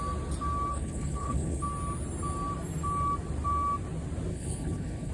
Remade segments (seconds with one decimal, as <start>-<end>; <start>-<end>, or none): 0.7-1.6; 4.3-5.1